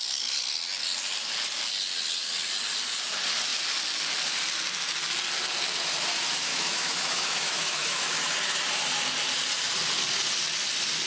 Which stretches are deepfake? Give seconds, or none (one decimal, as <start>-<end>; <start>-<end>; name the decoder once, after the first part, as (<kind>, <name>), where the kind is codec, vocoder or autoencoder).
6.5-8.2 (autoencoder, DAC-VAE)